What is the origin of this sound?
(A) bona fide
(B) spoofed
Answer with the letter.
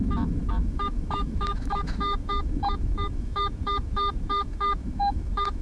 B